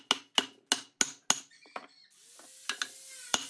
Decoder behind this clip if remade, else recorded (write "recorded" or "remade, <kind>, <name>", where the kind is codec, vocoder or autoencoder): recorded